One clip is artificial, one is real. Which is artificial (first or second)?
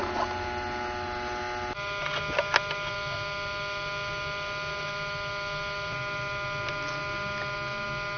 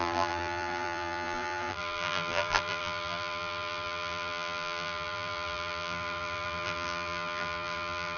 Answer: second